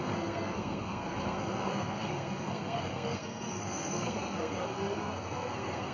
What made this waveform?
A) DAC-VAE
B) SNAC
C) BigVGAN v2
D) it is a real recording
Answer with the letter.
B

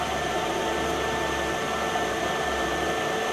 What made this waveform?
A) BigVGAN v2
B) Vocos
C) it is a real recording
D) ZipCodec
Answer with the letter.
A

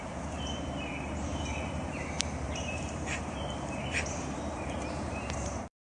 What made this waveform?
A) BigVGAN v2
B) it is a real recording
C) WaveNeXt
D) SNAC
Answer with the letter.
A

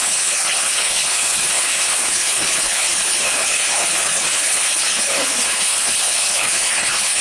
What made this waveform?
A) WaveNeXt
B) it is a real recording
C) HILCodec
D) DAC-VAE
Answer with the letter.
C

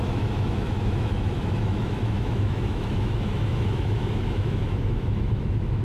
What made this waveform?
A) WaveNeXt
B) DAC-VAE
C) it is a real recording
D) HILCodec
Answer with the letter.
B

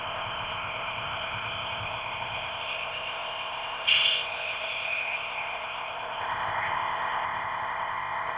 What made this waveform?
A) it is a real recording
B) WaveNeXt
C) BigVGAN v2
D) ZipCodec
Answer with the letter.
D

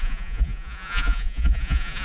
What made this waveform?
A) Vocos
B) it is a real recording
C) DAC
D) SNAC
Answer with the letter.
A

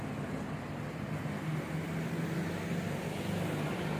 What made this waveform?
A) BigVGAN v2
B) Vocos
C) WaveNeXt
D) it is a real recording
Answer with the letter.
D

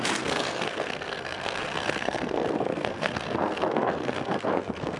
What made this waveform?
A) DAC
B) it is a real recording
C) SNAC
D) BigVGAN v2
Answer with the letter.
C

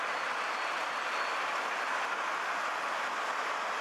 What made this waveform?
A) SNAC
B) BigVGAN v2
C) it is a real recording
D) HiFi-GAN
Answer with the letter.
C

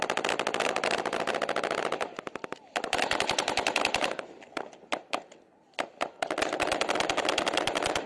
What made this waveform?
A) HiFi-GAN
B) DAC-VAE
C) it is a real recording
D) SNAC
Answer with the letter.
C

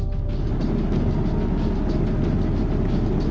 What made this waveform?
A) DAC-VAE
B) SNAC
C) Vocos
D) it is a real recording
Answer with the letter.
D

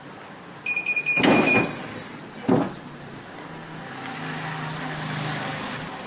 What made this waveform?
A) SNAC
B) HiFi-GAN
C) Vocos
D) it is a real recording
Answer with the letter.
D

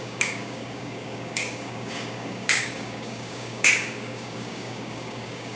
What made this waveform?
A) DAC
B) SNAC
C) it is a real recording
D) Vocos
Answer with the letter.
A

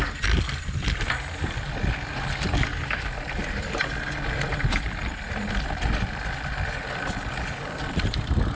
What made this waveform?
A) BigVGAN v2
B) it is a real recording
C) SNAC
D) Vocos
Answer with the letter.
B